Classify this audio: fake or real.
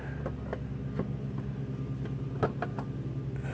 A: real